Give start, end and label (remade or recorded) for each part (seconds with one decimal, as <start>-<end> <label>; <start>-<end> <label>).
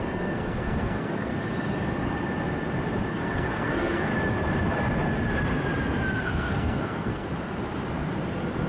0.0-1.3 remade; 1.3-3.1 recorded; 3.1-4.1 remade; 4.1-6.2 recorded; 6.2-7.3 remade; 7.3-8.7 recorded